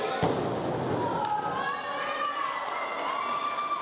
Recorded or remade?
recorded